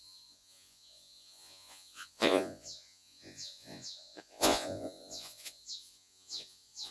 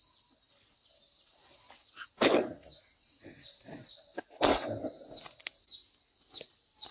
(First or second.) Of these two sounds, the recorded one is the second